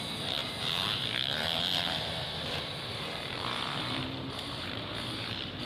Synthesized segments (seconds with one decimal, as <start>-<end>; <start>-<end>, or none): 0.0-5.7